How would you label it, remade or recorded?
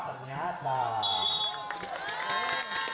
recorded